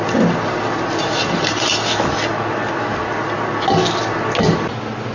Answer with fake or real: real